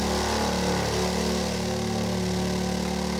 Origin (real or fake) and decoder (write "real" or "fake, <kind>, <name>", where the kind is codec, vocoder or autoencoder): real